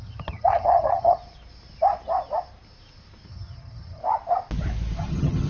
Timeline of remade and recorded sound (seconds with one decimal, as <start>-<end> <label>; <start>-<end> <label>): 0.0-1.2 remade; 1.2-3.3 recorded; 3.3-4.0 remade; 4.0-5.0 recorded; 5.0-5.5 remade